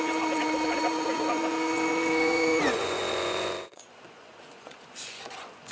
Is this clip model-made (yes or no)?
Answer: yes